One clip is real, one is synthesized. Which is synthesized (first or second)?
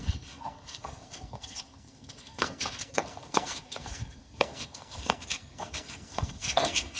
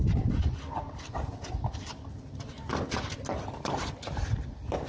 first